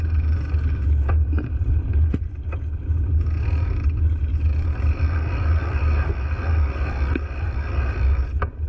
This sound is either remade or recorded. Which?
recorded